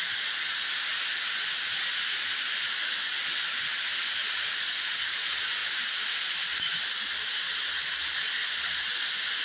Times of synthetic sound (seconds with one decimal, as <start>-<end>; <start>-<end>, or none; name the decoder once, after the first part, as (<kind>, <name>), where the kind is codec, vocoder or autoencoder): none